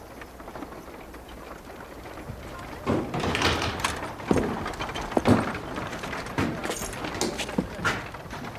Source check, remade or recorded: recorded